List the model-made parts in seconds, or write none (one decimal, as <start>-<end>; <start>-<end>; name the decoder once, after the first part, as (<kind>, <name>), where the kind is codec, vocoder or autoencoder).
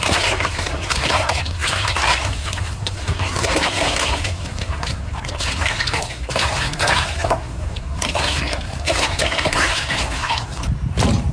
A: 0.0-10.6 (codec, SNAC)